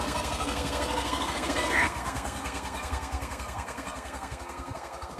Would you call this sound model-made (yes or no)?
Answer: yes